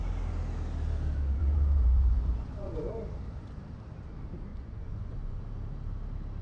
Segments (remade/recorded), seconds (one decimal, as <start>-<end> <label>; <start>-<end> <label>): 0.0-1.4 recorded; 1.4-2.9 remade; 2.9-4.5 recorded; 4.5-5.4 remade; 5.4-6.4 recorded